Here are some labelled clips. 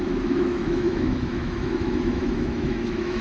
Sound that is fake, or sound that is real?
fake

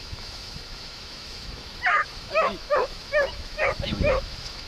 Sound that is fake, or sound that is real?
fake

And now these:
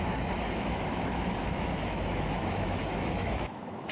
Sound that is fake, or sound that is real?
fake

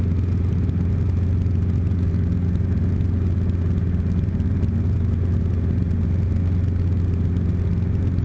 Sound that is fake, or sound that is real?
real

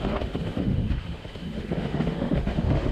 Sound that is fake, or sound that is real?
fake